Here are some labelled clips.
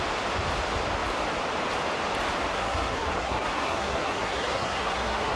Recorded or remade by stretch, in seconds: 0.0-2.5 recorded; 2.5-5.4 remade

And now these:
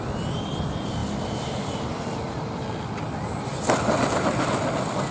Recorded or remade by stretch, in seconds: 0.0-5.1 recorded

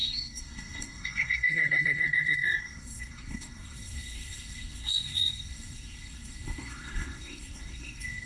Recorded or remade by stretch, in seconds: 0.0-8.3 remade

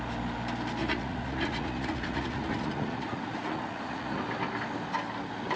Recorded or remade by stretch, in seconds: 0.0-0.8 recorded; 0.8-4.2 remade; 4.2-5.6 recorded